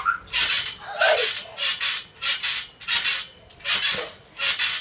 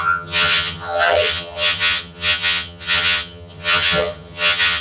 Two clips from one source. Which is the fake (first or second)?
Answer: second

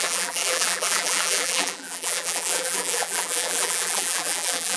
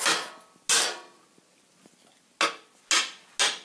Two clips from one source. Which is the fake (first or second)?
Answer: first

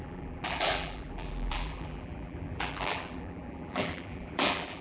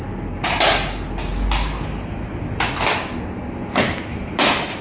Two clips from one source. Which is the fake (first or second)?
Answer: first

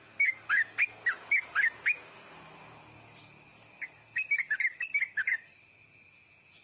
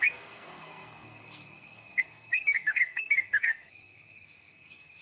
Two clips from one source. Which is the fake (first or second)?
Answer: second